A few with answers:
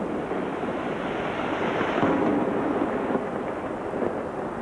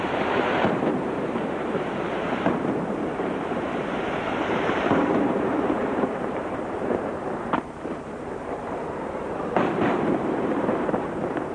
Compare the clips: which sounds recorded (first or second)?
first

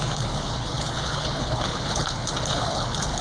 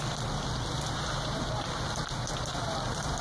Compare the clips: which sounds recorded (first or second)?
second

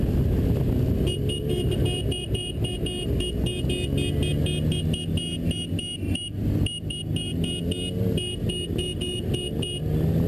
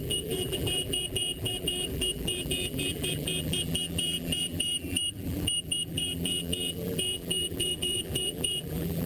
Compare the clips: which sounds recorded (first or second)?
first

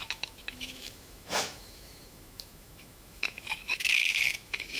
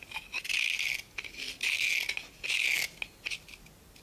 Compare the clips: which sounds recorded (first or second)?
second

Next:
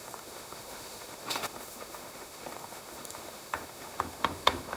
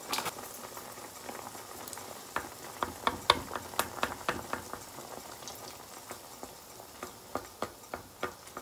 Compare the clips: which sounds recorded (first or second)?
second